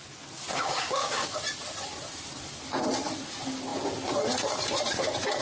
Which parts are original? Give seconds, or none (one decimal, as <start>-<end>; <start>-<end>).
0.0-0.5; 1.4-5.4